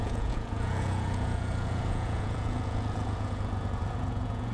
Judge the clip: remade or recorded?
remade